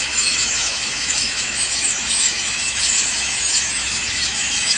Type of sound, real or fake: fake